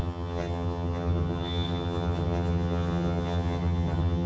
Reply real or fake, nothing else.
fake